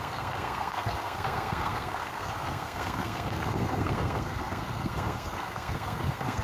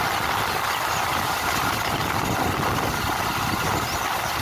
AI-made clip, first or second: first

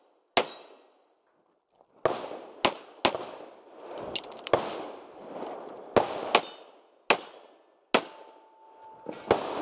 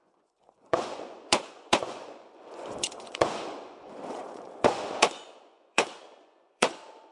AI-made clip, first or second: second